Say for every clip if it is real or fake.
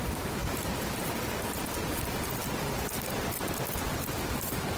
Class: real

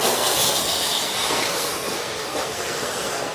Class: fake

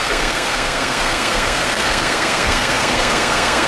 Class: fake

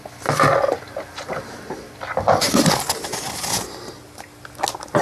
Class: real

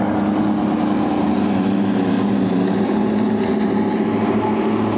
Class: real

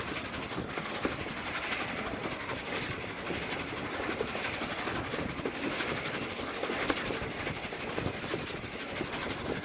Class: real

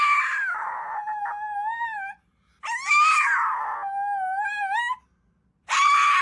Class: real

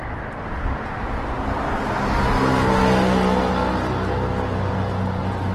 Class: real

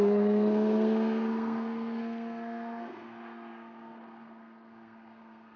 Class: fake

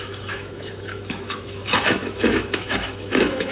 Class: fake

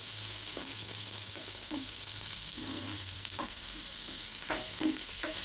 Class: fake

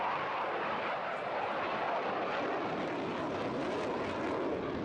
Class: real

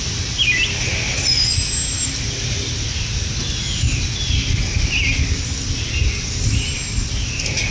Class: real